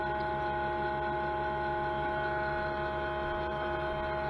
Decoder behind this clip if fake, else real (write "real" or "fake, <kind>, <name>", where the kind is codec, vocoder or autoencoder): real